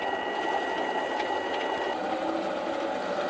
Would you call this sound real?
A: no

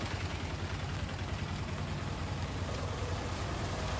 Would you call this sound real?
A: yes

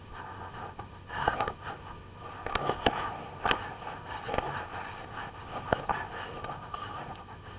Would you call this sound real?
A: no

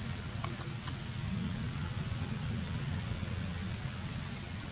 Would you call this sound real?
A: no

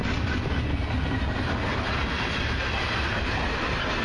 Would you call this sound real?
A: yes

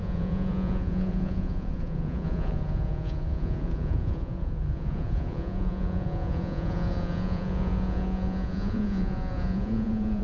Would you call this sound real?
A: no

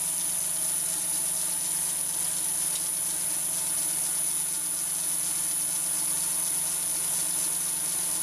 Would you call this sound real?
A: yes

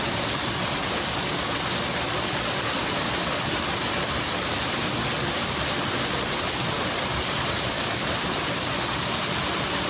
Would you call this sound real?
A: yes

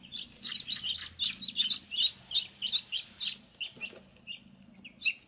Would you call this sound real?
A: yes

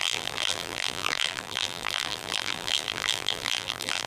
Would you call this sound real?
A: no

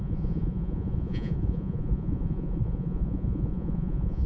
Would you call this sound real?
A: no